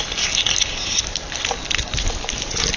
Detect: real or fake real